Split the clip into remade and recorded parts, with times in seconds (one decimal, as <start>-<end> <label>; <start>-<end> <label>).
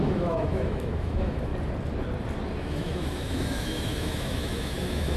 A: 0.0-1.5 remade; 1.5-2.6 recorded; 2.6-5.2 remade